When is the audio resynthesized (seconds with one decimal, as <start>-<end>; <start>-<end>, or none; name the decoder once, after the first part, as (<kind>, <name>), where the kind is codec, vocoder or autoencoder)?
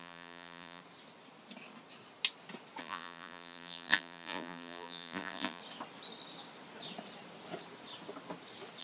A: 0.0-0.8 (vocoder, BigVGAN v2); 2.8-5.6